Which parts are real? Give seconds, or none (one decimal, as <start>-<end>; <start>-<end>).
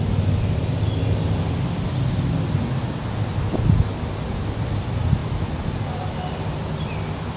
0.0-7.4